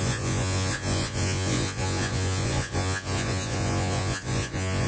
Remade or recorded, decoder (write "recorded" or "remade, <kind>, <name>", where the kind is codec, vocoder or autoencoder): remade, vocoder, Vocos